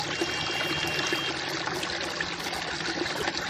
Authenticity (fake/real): real